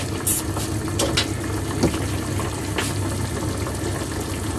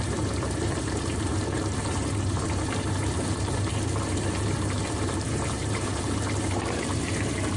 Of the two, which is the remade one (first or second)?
second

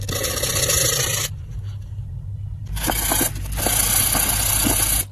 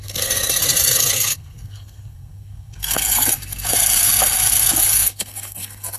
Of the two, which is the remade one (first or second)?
second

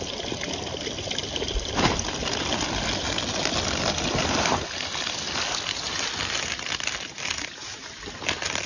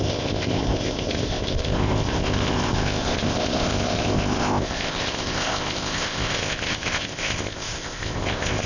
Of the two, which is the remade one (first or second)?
second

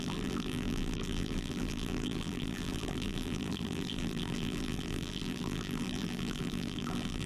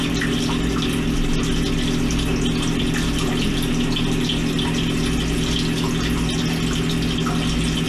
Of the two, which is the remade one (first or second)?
first